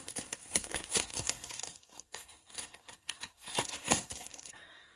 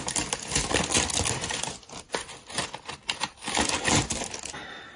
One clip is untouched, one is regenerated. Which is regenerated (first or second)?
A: first